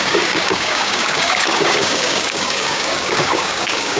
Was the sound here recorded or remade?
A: remade